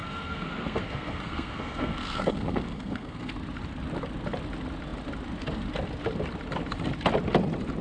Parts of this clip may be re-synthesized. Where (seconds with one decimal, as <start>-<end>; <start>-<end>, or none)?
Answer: 0.0-3.3